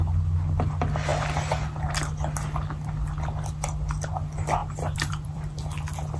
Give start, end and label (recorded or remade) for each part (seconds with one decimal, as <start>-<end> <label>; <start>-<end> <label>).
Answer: 0.0-4.6 recorded; 4.6-5.4 remade; 5.4-6.2 recorded

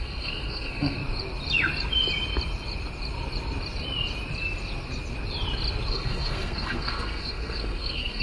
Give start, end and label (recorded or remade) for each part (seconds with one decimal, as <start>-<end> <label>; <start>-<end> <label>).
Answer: 0.0-1.0 remade; 1.0-5.9 recorded; 5.9-8.2 remade

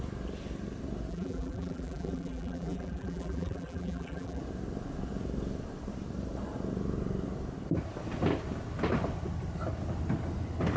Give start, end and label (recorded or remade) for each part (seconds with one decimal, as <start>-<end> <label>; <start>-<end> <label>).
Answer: 0.0-1.1 recorded; 1.1-4.4 remade; 4.4-10.8 recorded

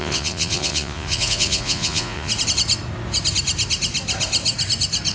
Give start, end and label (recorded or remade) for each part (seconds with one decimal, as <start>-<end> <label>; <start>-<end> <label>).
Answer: 0.0-2.3 remade; 2.3-5.1 recorded